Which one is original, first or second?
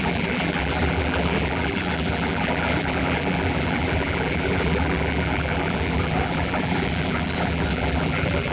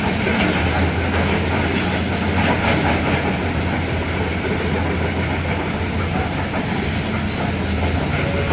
second